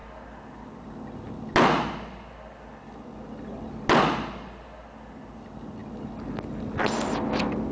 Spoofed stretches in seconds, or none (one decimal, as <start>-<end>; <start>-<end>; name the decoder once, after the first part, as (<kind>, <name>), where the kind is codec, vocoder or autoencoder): none